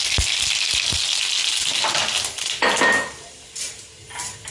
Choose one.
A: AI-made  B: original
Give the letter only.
B